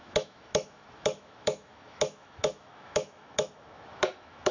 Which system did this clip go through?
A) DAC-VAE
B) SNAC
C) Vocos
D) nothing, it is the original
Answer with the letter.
A